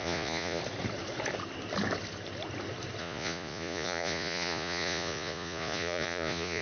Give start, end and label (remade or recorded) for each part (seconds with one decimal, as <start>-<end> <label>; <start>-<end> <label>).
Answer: 0.0-0.6 remade; 0.6-3.0 recorded; 3.0-6.6 remade